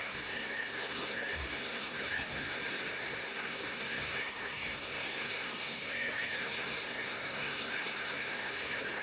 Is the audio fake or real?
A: fake